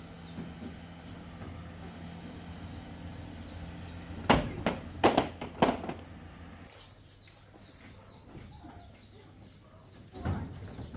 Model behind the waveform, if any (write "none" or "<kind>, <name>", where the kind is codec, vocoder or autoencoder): none